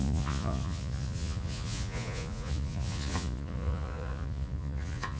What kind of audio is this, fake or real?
fake